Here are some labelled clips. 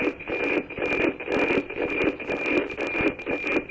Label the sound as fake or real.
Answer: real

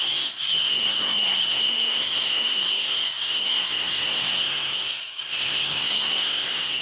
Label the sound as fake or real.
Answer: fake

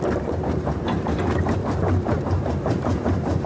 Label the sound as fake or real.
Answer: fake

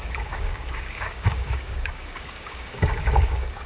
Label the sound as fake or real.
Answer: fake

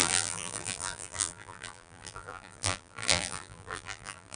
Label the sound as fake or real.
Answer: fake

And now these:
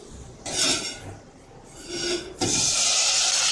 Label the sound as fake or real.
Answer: real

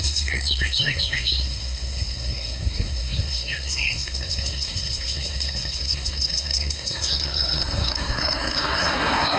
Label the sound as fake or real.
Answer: fake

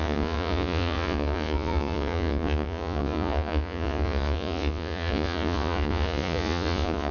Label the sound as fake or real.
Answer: fake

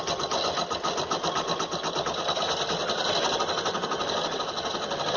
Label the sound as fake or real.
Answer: real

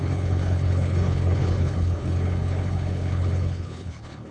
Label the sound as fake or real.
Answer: fake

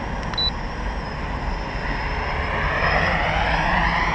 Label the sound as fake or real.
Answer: real